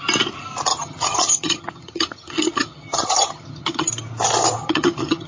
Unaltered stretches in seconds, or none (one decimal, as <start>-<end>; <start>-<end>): 0.0-0.7; 3.9-4.6